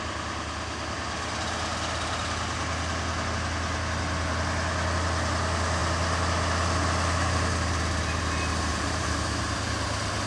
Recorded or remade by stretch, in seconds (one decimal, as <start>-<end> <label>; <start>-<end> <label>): 0.0-8.7 recorded; 8.7-9.7 remade; 9.7-10.3 recorded